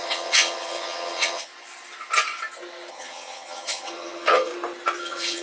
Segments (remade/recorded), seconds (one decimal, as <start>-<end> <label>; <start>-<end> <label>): 0.0-1.5 remade; 1.5-2.9 recorded; 2.9-4.5 remade; 4.5-5.0 recorded; 5.0-5.4 remade